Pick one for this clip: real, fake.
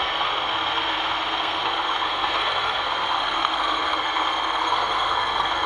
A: fake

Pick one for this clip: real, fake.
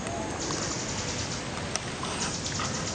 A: real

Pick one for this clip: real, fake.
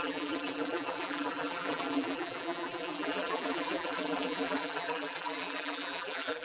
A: fake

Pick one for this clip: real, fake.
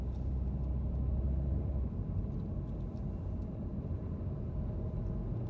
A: real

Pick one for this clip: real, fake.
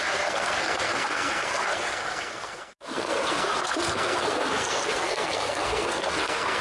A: fake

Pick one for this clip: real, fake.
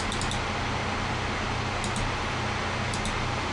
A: real